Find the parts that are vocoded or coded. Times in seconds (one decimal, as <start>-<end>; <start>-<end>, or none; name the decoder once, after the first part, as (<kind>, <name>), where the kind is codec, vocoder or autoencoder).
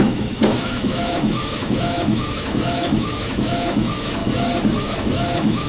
0.0-4.2 (autoencoder, DAC-VAE); 4.8-5.7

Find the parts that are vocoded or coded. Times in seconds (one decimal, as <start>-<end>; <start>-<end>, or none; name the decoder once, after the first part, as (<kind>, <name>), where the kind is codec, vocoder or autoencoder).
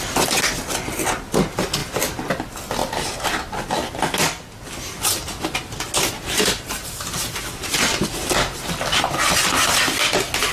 none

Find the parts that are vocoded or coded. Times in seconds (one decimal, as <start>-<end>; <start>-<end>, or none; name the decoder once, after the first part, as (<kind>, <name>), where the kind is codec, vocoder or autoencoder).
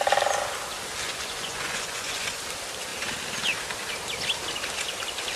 1.0-2.4 (vocoder, Vocos)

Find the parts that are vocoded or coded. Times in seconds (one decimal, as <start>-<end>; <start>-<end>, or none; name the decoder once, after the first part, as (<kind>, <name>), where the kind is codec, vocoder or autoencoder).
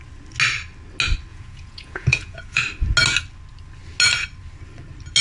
1.3-2.6 (vocoder, Vocos)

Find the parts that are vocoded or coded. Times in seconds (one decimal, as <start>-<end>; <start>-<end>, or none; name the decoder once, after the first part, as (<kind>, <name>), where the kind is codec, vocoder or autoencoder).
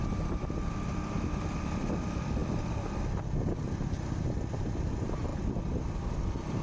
none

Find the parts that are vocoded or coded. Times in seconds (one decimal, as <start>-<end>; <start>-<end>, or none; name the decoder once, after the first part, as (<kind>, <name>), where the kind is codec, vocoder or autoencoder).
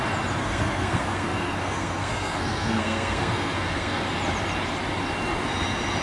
0.4-4.0 (codec, SNAC)